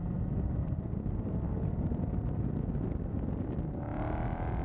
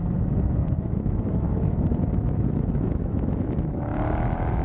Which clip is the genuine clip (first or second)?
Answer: first